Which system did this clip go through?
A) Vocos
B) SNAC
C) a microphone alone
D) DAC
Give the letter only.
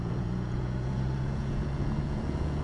A